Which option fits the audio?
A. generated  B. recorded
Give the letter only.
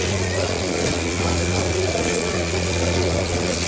A